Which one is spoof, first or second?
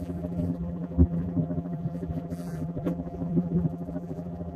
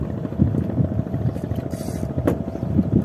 first